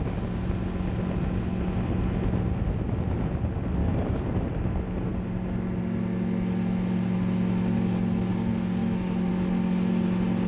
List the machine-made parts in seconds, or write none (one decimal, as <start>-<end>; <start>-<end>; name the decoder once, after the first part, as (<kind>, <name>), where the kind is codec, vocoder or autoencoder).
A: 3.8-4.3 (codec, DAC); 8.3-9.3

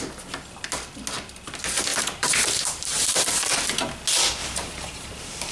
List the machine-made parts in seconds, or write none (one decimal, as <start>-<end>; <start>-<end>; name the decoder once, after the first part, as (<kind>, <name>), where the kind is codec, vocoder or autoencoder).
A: 1.9-3.0 (vocoder, BigVGAN v2); 4.4-5.5

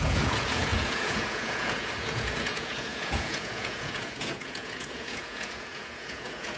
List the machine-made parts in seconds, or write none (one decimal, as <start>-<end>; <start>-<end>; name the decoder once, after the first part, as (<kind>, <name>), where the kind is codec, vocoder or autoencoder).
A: 0.0-6.6 (vocoder, Vocos)